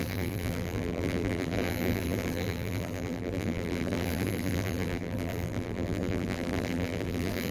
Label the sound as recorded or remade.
remade